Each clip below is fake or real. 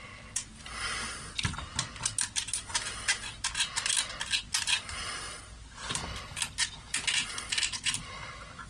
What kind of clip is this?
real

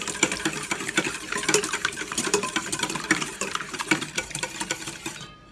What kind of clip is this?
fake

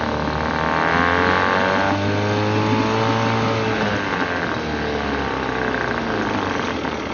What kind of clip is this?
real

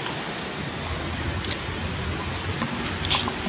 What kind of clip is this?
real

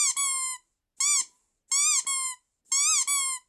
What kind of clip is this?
real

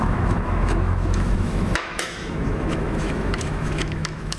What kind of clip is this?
fake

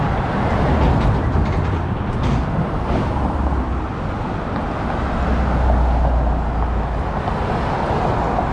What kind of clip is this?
real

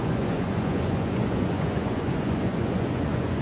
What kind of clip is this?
fake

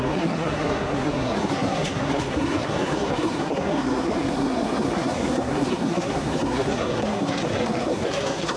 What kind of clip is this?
fake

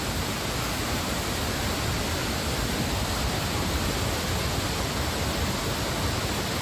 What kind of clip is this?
real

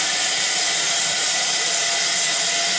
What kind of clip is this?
real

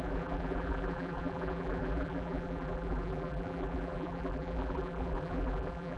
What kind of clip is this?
fake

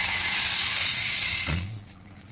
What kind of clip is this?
fake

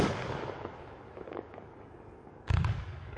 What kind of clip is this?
fake